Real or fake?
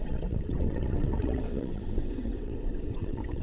fake